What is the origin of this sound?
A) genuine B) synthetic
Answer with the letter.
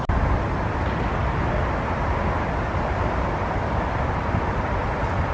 A